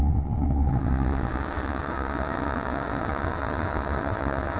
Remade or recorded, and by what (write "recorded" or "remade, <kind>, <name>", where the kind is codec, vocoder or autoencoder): remade, vocoder, WaveNeXt